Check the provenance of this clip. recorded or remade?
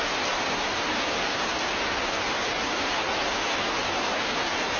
recorded